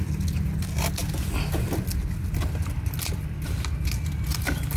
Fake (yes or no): no